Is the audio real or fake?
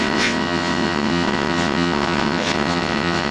fake